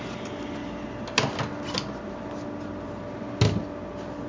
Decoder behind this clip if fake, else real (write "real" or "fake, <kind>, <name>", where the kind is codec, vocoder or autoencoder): real